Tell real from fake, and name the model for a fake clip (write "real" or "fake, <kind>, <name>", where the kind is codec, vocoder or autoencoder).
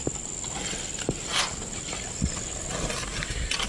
real